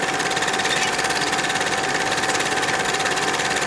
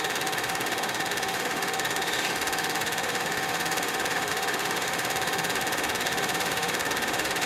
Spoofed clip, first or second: second